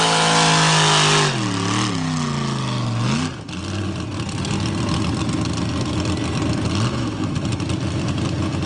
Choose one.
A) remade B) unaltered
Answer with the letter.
B